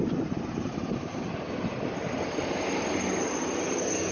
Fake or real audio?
real